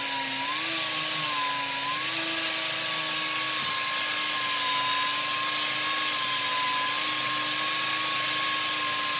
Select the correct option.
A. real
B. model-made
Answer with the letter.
A